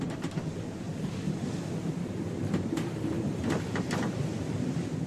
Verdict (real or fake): real